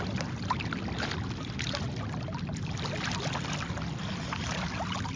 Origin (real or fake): real